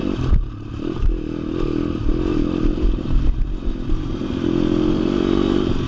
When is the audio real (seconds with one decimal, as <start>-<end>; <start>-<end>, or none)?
1.0-2.3